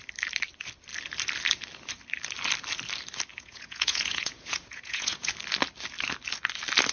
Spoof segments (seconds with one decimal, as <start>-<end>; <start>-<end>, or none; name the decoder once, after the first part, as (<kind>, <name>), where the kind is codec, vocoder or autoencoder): 3.3-5.3 (vocoder, Vocos)